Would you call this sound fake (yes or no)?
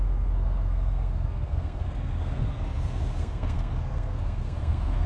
yes